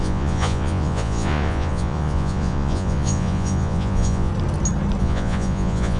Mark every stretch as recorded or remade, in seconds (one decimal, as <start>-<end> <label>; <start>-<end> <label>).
0.0-4.3 remade; 4.3-5.0 recorded; 5.0-6.0 remade